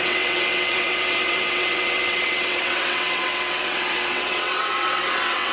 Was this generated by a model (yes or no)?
yes